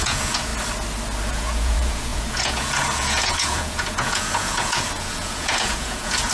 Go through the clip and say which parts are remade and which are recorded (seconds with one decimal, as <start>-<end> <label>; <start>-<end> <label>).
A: 0.0-0.5 remade; 0.5-1.3 recorded; 1.3-6.3 remade